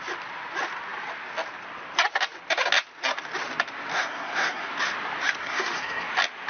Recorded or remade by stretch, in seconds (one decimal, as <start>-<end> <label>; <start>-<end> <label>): 0.0-3.9 recorded; 3.9-4.7 remade; 4.7-5.4 recorded; 5.4-6.1 remade; 6.1-6.5 recorded